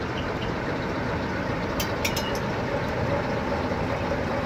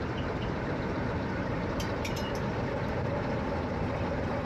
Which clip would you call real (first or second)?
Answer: first